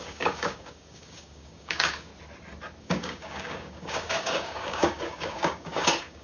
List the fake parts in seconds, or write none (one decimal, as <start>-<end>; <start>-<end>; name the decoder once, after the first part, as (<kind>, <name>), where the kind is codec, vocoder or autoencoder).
0.0-2.1 (codec, DAC); 2.8-6.2